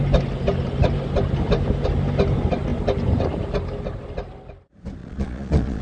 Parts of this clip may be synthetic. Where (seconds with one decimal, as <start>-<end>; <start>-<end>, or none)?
5.0-5.8